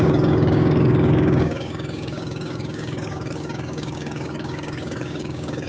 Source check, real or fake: fake